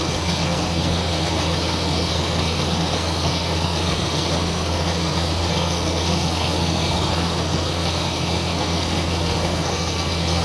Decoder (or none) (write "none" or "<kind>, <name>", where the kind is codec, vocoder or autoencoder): codec, SNAC